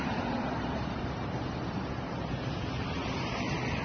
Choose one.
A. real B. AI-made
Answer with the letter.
B